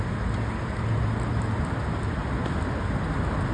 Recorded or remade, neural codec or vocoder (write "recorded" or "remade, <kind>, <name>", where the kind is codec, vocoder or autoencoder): recorded